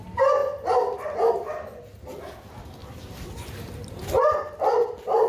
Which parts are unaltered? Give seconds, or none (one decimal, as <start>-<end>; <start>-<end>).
0.0-2.8